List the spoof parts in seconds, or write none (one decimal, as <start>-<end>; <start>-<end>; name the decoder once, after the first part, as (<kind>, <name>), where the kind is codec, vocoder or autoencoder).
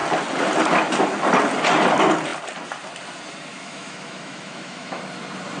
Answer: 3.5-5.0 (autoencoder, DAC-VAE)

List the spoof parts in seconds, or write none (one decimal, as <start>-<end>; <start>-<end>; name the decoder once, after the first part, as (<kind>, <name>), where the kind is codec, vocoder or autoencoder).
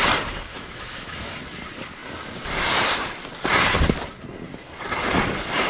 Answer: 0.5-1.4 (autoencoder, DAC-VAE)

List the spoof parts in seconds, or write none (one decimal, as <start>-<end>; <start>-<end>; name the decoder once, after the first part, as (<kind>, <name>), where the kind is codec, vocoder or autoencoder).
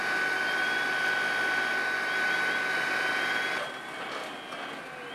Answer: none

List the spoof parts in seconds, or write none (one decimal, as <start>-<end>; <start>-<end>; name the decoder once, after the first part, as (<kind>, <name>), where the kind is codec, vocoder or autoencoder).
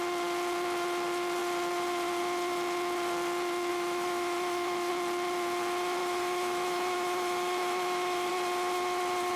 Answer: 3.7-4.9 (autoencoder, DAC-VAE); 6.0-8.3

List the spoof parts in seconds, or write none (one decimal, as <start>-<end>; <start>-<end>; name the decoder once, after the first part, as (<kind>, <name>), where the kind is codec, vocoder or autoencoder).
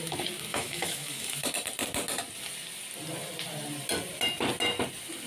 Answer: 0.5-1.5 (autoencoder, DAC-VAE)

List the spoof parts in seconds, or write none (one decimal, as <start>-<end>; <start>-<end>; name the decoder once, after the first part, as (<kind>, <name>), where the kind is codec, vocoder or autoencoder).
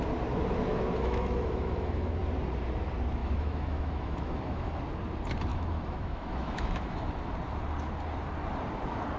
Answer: 0.7-2.2 (autoencoder, DAC-VAE); 3.2-4.8; 5.5-7.1